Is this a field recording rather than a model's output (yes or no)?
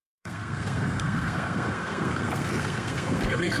no